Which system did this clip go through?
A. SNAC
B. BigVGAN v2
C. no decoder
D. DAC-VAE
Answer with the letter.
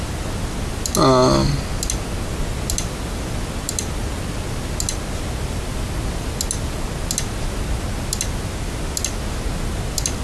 C